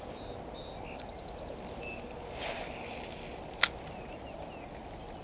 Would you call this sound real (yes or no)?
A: yes